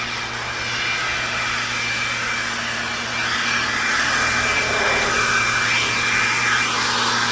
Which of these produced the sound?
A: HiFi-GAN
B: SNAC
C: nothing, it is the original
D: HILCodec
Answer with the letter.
C